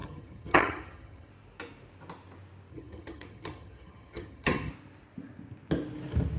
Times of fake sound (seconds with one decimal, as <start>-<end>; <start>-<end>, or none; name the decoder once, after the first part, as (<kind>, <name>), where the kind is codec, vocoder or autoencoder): 0.0-1.3 (vocoder, HiFi-GAN); 2.7-4.7